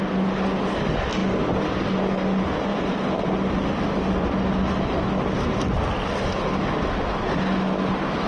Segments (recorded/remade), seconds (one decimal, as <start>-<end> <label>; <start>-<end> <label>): 0.0-2.7 recorded; 2.7-4.3 remade; 4.3-8.3 recorded